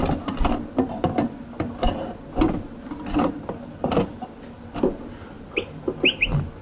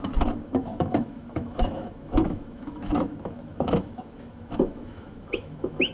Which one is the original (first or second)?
first